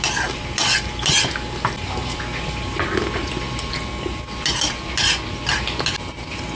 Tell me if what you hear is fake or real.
real